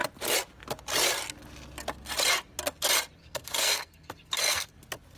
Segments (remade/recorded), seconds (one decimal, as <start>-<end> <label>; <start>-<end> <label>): 0.0-3.2 recorded; 3.2-4.7 remade; 4.7-5.2 recorded